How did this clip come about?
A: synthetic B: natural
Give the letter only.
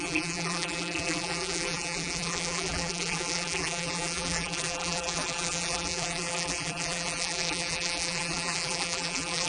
A